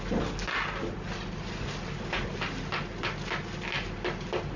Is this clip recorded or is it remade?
recorded